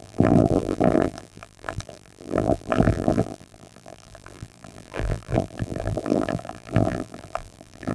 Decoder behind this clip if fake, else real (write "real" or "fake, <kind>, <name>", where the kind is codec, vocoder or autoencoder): fake, vocoder, BigVGAN v2